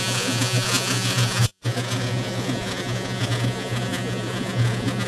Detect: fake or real fake